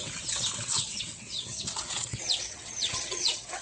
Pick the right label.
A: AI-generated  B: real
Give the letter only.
A